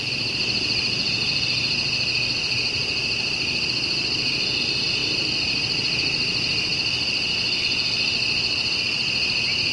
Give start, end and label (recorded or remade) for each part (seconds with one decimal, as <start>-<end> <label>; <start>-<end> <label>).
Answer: 0.0-5.0 recorded; 5.0-7.6 remade; 7.6-9.7 recorded